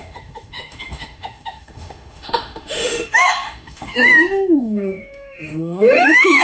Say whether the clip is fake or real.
fake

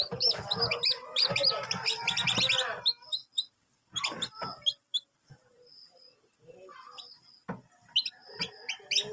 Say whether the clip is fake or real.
real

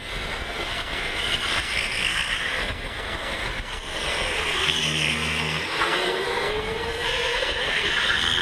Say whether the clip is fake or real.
fake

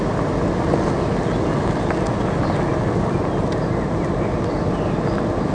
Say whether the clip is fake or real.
real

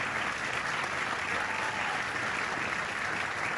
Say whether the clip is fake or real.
real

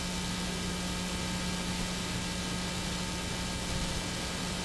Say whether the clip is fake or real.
real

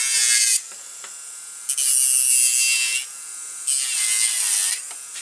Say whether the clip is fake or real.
real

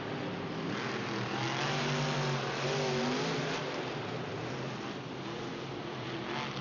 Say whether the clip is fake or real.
real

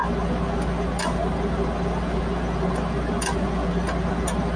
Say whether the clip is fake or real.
real